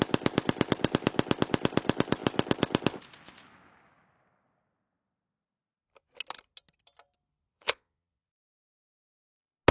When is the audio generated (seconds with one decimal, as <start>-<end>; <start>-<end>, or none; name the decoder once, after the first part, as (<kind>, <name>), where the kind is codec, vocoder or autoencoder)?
7.5-8.4 (vocoder, Vocos)